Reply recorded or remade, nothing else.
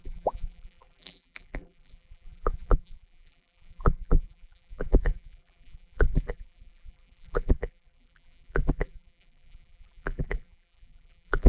remade